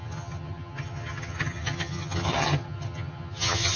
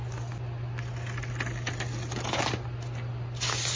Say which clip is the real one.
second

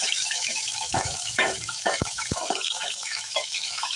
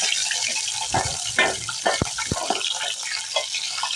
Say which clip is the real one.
second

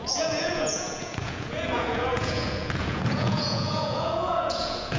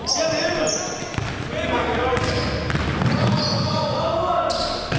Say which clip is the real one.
second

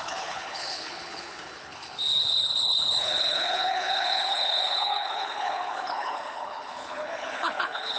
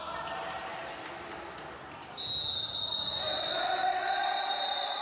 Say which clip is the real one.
second